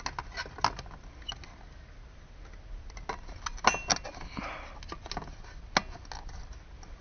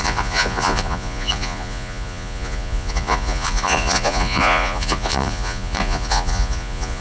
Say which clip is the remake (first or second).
second